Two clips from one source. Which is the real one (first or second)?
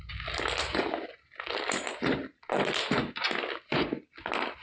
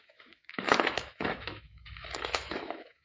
first